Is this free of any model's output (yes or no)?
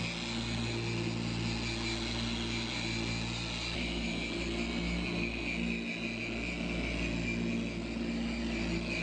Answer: yes